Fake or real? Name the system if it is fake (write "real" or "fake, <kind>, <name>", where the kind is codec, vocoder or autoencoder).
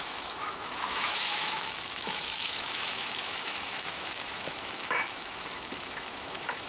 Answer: fake, autoencoder, DAC-VAE